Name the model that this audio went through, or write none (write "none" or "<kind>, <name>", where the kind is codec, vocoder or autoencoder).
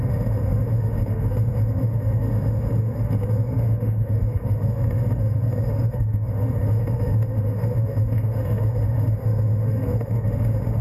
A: autoencoder, DAC-VAE